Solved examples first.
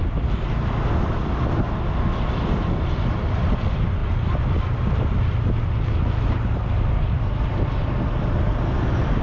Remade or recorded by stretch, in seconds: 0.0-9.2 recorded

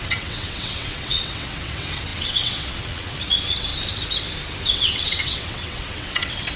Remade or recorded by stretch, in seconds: 0.0-3.7 remade; 3.7-4.6 recorded; 4.6-6.6 remade